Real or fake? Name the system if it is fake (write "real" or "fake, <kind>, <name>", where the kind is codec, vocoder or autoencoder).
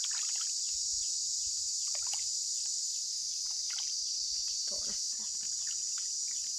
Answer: fake, vocoder, BigVGAN v2